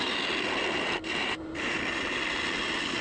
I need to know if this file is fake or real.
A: real